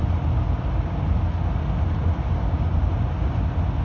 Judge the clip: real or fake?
real